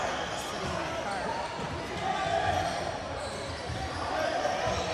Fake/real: real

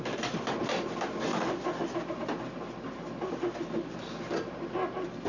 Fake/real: real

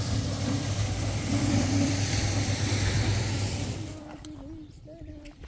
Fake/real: fake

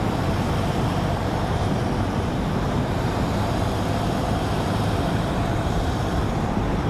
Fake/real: fake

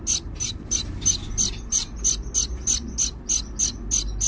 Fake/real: real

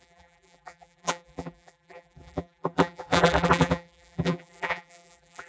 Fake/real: fake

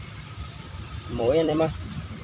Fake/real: fake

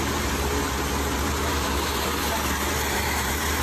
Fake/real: fake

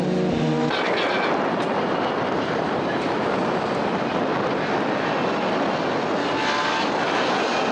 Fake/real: real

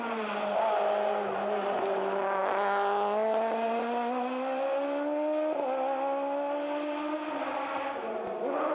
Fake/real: real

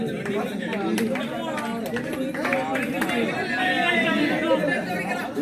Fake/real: real